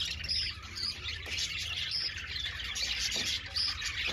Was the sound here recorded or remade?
recorded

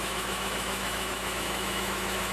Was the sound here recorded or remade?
remade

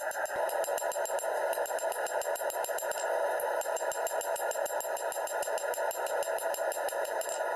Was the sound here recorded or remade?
recorded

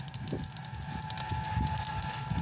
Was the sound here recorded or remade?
recorded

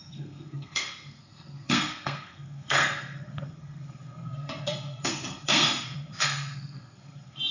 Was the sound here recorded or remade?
remade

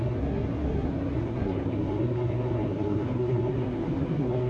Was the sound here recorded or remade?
remade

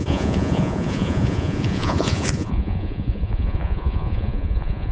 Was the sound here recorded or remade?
remade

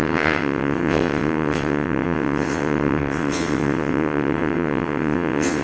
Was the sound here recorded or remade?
remade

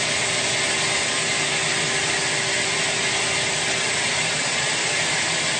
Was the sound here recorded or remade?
recorded